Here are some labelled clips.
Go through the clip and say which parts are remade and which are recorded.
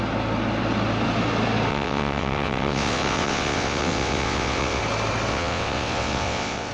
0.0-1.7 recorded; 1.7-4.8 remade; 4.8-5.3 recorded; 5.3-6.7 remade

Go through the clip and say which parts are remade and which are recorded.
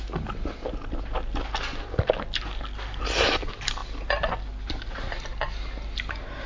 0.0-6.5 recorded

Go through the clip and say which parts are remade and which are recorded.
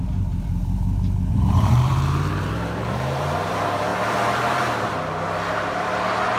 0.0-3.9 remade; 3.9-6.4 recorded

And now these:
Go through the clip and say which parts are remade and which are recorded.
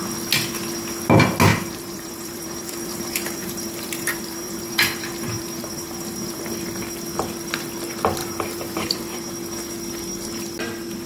0.0-1.5 recorded; 1.5-6.4 remade; 6.4-8.2 recorded; 8.2-9.3 remade; 9.3-11.1 recorded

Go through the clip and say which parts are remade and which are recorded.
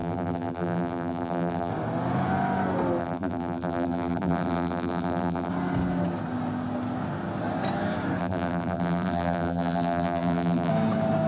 0.0-1.7 remade; 1.7-3.0 recorded; 3.0-5.5 remade; 5.5-8.2 recorded; 8.2-10.7 remade; 10.7-11.3 recorded